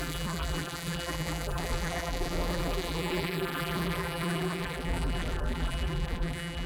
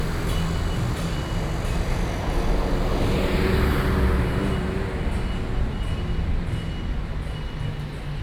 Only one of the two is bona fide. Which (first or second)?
second